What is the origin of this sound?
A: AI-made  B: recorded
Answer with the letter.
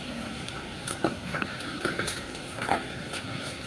A